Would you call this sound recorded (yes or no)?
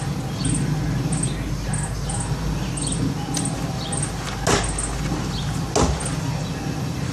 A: yes